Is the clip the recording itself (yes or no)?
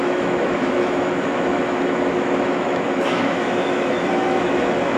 no